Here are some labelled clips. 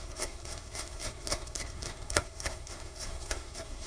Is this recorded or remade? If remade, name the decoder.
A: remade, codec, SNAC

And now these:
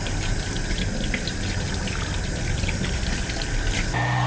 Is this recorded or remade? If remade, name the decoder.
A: recorded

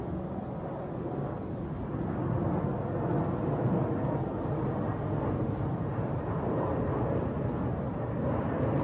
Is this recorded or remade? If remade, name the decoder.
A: recorded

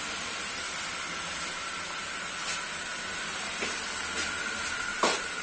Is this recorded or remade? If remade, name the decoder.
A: recorded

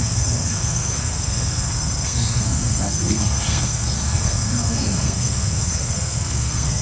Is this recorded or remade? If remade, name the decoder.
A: remade, codec, SNAC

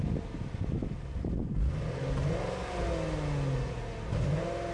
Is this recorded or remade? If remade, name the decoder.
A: recorded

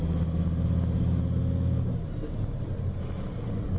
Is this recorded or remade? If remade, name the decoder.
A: recorded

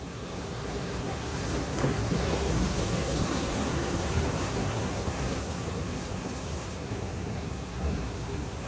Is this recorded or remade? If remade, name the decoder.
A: remade, codec, SNAC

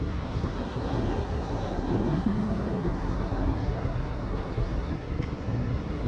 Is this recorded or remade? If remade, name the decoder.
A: remade, codec, SNAC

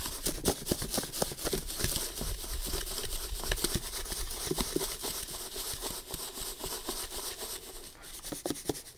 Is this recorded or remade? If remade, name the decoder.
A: recorded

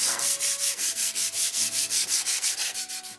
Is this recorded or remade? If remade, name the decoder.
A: remade, codec, SNAC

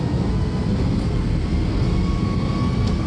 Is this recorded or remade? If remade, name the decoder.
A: remade, codec, SNAC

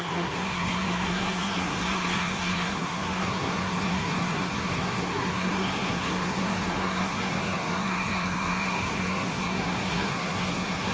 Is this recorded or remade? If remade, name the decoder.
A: remade, codec, SNAC